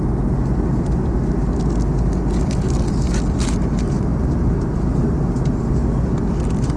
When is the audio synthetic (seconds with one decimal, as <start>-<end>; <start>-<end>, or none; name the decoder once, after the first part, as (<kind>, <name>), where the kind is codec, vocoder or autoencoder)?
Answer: none